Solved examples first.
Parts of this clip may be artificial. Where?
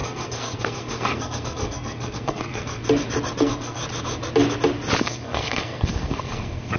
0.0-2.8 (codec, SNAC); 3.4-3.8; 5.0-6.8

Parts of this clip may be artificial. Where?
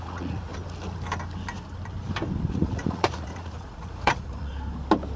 0.0-0.5 (vocoder, Vocos); 2.5-4.5